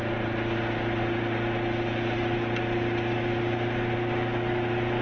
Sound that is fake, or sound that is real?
real